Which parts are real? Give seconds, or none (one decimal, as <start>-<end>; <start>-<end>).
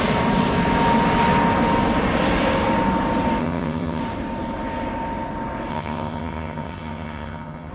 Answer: 0.0-3.4; 4.0-5.7